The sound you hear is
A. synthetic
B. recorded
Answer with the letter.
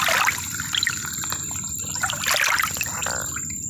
B